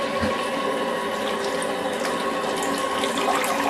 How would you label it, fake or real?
real